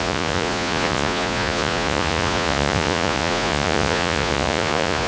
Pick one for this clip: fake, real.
fake